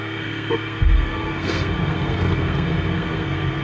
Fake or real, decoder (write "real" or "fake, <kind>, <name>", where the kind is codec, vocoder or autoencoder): fake, codec, SNAC